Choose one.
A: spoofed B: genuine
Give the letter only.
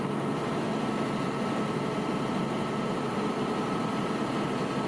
B